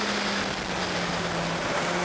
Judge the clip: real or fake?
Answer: real